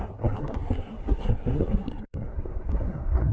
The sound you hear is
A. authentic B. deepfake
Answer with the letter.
B